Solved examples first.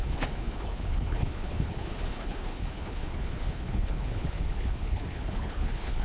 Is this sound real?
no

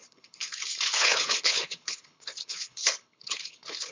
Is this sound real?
no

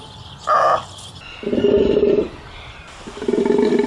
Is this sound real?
yes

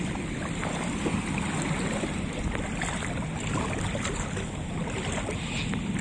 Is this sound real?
yes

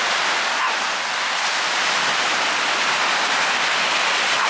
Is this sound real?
yes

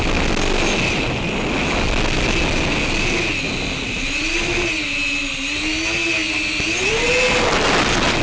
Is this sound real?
yes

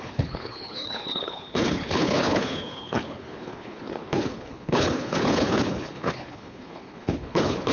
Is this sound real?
no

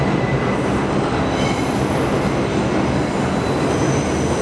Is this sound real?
yes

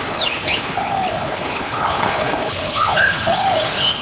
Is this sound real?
no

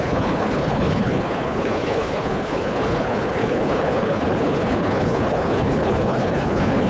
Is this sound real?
no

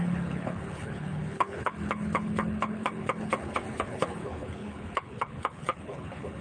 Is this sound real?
no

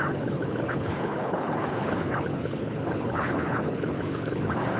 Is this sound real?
no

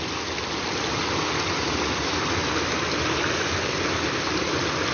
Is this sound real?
yes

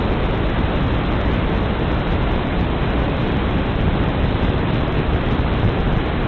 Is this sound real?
yes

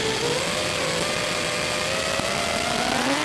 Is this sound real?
yes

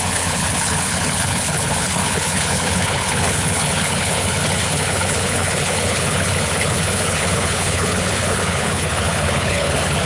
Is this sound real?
no